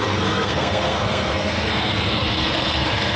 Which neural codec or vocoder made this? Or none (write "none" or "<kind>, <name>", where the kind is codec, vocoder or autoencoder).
codec, SNAC